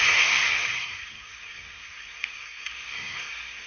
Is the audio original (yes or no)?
no